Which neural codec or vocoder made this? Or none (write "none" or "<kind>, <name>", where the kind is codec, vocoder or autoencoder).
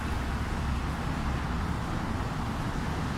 none